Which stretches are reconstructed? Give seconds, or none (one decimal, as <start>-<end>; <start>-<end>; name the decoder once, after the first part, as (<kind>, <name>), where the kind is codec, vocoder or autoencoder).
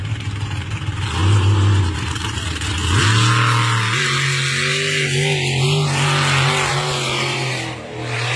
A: 0.0-2.8 (vocoder, BigVGAN v2); 6.7-8.4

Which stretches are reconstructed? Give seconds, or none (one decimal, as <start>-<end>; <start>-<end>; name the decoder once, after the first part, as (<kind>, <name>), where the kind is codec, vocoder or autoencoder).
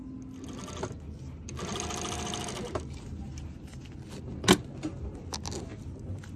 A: 5.7-6.4 (vocoder, BigVGAN v2)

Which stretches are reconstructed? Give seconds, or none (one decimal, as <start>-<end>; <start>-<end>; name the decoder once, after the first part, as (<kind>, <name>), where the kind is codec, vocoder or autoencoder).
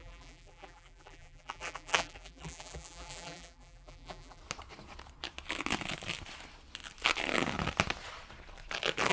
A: 0.0-4.4 (vocoder, BigVGAN v2)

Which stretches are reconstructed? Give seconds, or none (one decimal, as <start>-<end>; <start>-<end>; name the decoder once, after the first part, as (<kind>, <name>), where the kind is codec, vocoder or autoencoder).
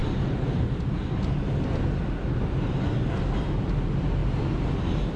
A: none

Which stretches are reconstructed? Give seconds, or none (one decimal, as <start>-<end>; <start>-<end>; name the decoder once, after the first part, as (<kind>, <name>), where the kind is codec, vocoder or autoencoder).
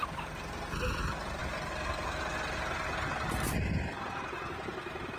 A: 0.0-1.4 (vocoder, BigVGAN v2); 4.5-5.2